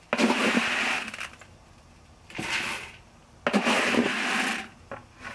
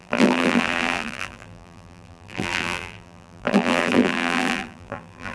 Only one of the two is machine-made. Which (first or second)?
second